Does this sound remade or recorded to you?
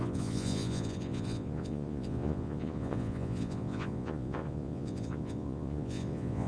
remade